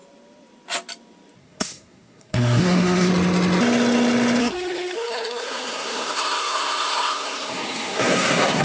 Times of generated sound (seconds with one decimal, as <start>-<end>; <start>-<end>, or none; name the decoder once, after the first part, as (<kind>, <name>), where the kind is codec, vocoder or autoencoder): 1.4-3.1 (codec, SNAC); 4.4-8.6

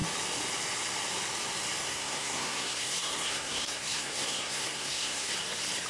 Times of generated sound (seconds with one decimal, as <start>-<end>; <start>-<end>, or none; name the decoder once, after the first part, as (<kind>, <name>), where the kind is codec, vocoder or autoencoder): 1.8-5.3 (codec, SNAC)

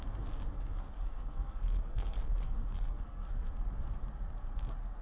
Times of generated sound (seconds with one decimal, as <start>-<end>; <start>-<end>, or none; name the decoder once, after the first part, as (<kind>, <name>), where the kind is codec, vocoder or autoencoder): 0.5-3.5 (codec, SNAC)

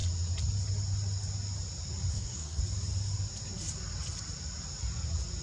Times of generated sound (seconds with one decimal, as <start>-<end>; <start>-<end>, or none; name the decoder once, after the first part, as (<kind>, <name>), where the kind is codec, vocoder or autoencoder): 2.1-2.6 (codec, SNAC)